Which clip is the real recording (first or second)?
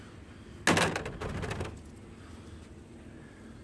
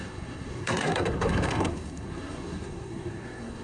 first